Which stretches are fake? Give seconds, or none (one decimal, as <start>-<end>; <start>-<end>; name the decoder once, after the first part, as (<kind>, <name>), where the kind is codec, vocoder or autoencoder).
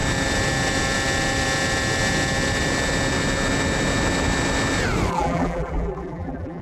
5.1-6.6 (vocoder, BigVGAN v2)